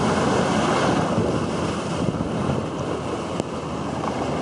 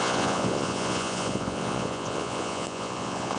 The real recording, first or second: first